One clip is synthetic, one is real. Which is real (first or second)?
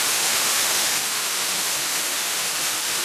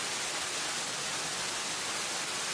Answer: second